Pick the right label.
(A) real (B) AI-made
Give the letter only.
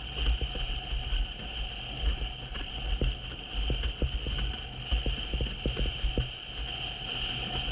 A